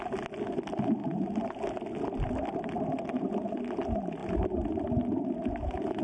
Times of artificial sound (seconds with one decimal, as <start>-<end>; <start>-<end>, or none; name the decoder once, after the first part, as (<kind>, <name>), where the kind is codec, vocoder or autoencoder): none